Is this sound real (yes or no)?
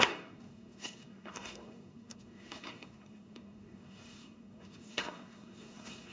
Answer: no